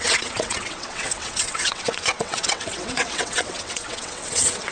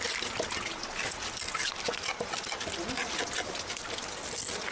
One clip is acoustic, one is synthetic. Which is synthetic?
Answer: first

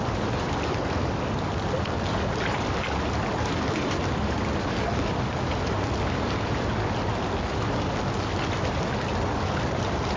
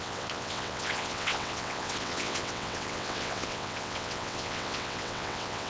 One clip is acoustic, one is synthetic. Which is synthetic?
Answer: second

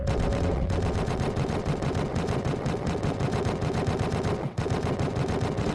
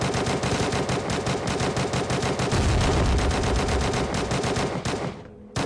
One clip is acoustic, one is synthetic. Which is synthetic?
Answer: first